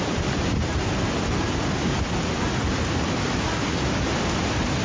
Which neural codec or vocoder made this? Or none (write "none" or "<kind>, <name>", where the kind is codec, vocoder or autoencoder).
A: none